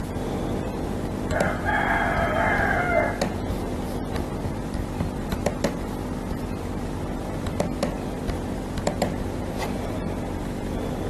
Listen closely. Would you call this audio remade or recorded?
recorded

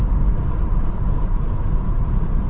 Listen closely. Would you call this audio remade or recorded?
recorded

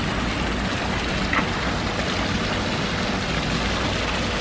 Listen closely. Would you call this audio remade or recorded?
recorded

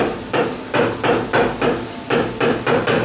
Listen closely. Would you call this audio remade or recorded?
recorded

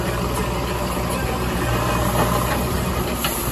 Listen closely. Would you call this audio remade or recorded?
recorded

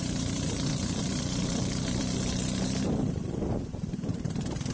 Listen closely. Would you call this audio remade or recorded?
remade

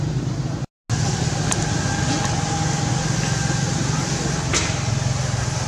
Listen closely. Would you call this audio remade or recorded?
recorded